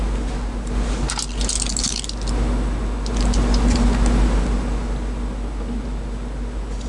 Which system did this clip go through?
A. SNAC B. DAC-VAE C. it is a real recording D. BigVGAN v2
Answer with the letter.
C